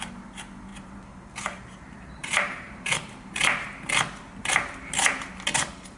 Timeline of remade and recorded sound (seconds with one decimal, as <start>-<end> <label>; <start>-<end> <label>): 0.0-2.2 recorded; 2.2-3.9 remade; 3.9-4.4 recorded; 4.4-5.3 remade; 5.3-6.0 recorded